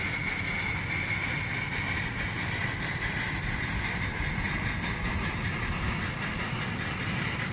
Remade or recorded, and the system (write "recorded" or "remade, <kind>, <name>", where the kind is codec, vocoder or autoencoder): recorded